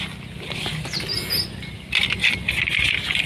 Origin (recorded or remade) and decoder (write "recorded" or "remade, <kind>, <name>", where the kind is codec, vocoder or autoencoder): recorded